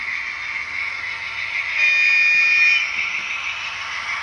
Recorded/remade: recorded